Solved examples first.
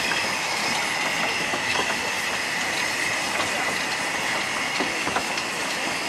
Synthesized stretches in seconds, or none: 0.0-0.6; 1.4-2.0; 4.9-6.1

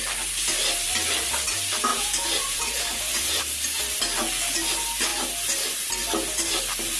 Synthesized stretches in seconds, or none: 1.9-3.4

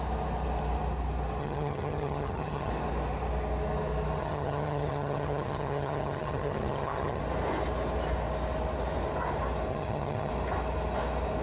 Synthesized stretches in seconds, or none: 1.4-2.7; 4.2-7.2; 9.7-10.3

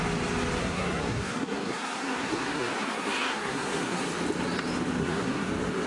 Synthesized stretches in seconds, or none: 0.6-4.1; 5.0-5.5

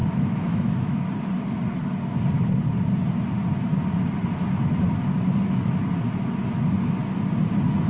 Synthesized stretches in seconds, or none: 0.0-1.0

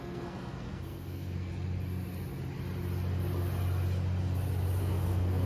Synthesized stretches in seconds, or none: 0.0-1.5; 4.8-5.5

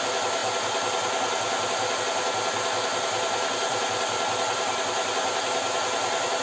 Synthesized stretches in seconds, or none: 3.7-4.8

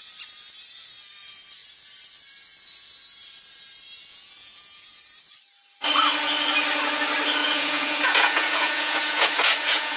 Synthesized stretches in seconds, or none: 4.1-5.0; 7.4-10.0